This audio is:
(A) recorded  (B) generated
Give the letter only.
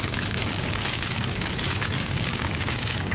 B